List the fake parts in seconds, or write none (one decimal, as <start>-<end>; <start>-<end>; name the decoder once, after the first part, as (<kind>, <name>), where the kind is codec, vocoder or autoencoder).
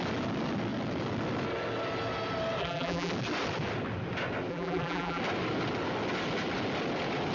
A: 2.6-3.1 (vocoder, BigVGAN v2); 4.5-5.2